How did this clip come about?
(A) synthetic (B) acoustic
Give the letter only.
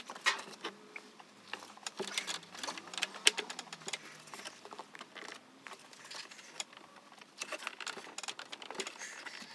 B